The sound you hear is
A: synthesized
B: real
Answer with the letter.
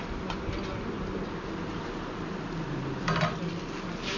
B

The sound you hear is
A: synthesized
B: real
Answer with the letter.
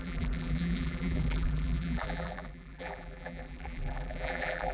A